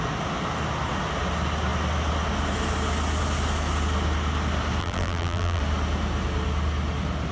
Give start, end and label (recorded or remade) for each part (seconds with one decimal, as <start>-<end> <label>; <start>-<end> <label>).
0.0-4.8 recorded; 4.8-5.6 remade; 5.6-7.3 recorded